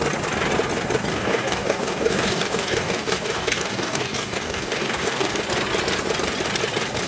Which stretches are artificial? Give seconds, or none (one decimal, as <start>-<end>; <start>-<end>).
1.1-5.4